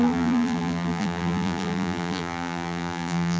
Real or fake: fake